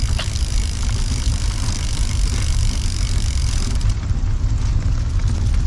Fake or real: real